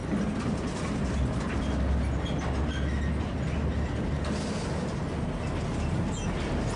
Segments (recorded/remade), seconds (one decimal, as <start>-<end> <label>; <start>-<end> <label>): 0.0-6.8 recorded